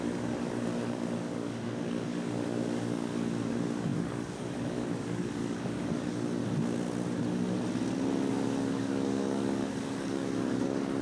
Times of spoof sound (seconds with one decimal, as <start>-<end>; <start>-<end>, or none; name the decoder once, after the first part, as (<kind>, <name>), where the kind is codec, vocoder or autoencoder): 0.0-6.4 (codec, DAC); 8.3-11.0